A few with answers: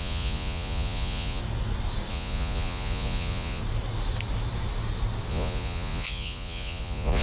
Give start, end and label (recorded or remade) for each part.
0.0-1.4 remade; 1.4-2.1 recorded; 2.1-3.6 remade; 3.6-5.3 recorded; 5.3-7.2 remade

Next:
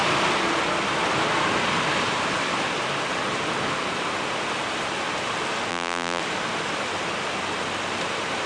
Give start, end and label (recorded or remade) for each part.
0.0-5.7 recorded; 5.7-6.2 remade; 6.2-8.5 recorded

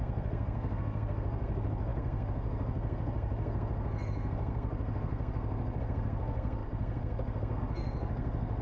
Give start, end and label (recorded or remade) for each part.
0.0-8.6 remade

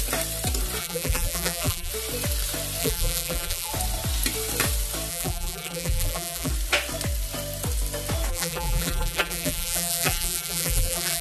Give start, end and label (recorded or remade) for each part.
0.0-0.8 recorded; 0.8-1.9 remade; 1.9-2.8 recorded; 2.8-3.7 remade; 3.7-5.1 recorded; 5.1-6.5 remade; 6.5-8.3 recorded; 8.3-11.2 remade

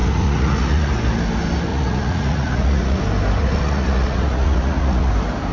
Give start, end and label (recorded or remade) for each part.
0.0-0.9 remade; 0.9-1.7 recorded; 1.7-3.0 remade; 3.0-3.4 recorded; 3.4-5.1 remade; 5.1-5.5 recorded